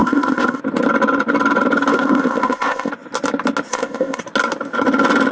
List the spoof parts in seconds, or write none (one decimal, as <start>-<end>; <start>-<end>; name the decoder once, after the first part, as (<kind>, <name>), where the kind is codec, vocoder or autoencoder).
0.0-0.6 (codec, ZipCodec); 1.9-2.9; 3.7-4.2